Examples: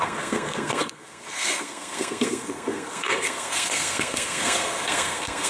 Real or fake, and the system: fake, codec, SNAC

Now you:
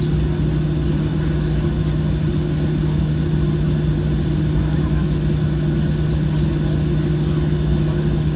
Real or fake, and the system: real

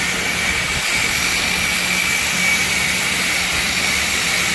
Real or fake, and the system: real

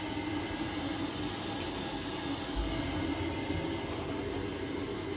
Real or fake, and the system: real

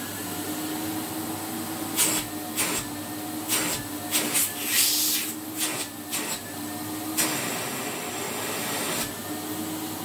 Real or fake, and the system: real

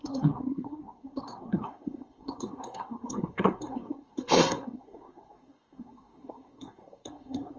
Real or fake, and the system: fake, codec, SNAC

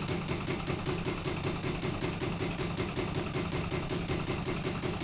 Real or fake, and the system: real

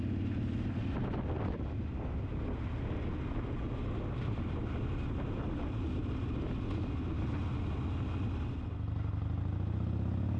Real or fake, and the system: real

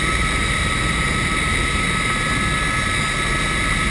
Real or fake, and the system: real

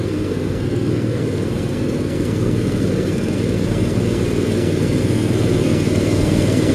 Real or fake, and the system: fake, codec, SNAC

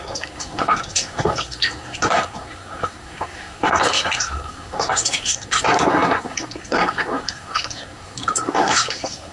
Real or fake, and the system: fake, codec, SNAC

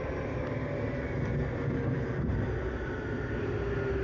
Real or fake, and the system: real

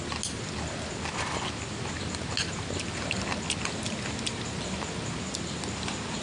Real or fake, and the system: real